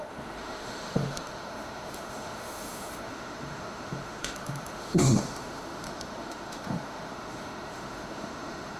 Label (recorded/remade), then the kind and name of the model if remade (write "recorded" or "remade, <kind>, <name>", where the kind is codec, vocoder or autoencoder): remade, autoencoder, DAC-VAE